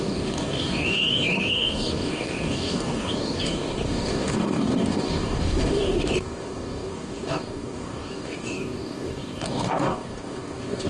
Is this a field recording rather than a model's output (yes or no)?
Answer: no